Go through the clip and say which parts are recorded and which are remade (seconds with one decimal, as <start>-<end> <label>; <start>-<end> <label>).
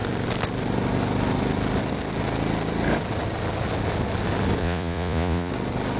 0.0-4.6 recorded; 4.6-5.5 remade; 5.5-6.0 recorded